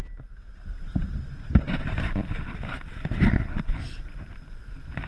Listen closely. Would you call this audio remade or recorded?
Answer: recorded